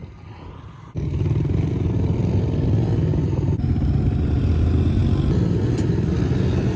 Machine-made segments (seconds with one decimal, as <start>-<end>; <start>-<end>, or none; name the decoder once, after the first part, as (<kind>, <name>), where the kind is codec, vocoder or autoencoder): 3.1-3.6 (vocoder, BigVGAN v2)